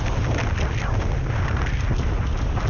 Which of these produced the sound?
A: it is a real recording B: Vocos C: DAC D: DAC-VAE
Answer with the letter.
A